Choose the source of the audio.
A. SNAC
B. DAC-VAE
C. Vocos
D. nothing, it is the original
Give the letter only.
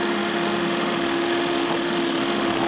B